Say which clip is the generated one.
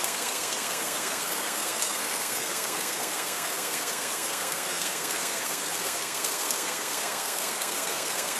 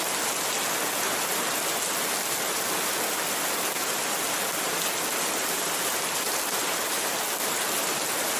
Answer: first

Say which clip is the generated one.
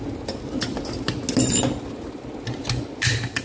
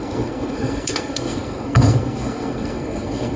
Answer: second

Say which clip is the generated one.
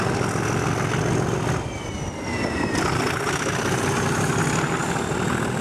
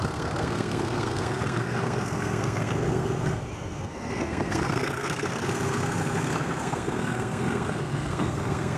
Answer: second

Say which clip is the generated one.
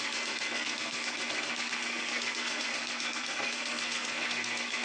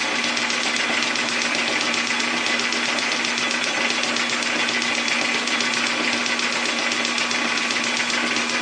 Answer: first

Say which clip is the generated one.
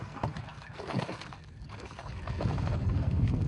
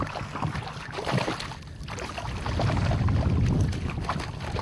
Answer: first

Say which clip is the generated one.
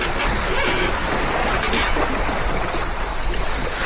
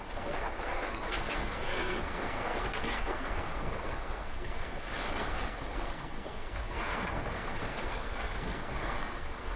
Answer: second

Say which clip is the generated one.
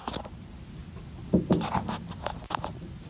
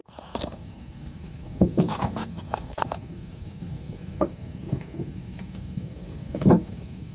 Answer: second